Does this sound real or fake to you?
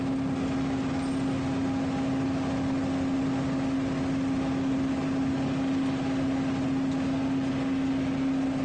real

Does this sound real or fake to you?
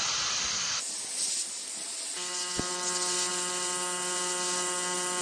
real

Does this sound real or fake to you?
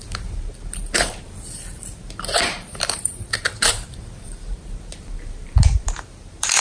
fake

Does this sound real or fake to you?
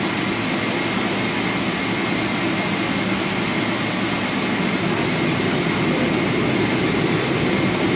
real